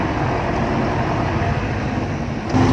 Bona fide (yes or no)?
yes